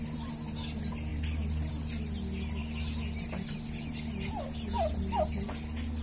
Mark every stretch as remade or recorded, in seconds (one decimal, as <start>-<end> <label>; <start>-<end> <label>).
0.0-6.0 recorded